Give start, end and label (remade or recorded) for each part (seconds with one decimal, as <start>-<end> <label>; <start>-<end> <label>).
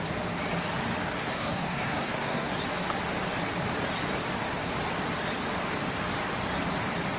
0.0-1.2 recorded; 1.2-2.5 remade; 2.5-7.2 recorded